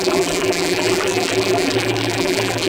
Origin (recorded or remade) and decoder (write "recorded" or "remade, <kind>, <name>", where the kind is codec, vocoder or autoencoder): remade, vocoder, BigVGAN v2